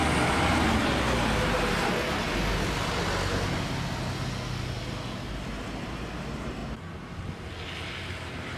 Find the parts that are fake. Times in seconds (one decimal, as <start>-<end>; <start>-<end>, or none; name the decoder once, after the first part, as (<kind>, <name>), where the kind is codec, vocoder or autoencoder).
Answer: none